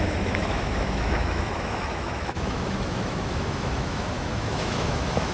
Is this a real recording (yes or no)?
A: no